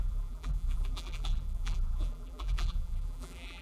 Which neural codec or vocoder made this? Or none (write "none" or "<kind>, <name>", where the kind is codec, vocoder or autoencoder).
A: vocoder, BigVGAN v2